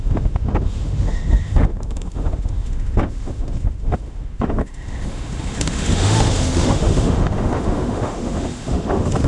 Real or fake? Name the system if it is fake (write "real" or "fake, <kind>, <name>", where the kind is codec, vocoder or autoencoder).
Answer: fake, autoencoder, DAC-VAE